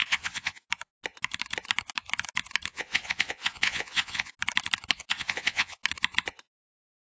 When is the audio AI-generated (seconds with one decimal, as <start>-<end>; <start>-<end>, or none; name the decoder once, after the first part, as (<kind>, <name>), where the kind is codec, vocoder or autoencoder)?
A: 0.0-0.7 (vocoder, Vocos); 2.7-4.3; 5.0-5.8